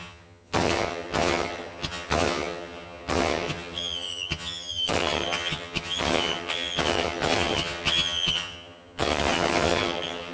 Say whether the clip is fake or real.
fake